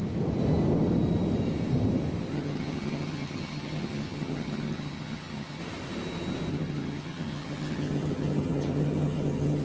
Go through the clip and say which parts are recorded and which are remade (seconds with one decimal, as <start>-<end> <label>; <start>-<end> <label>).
0.0-2.3 recorded; 2.3-5.6 remade; 5.6-6.5 recorded; 6.5-9.6 remade